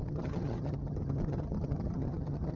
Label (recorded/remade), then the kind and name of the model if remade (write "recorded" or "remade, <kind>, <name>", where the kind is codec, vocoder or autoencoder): remade, vocoder, HiFi-GAN